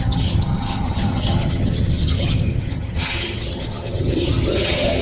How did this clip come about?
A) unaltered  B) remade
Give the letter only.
B